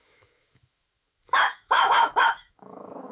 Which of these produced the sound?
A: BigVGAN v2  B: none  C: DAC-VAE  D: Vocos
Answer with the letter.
C